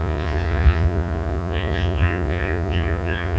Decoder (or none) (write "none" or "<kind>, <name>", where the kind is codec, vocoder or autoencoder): vocoder, Vocos